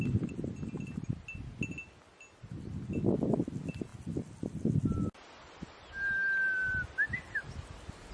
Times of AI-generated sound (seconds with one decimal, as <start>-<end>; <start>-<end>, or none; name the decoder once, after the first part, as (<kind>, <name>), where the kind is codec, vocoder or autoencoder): none